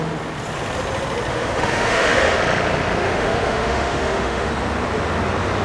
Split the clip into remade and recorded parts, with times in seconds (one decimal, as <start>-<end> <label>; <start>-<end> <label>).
0.0-1.3 recorded; 1.3-2.4 remade; 2.4-3.0 recorded; 3.0-4.5 remade; 4.5-5.6 recorded

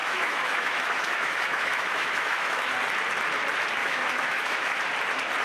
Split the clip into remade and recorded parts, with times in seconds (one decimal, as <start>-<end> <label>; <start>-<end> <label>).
0.0-2.7 remade; 2.7-3.8 recorded; 3.8-4.8 remade; 4.8-5.4 recorded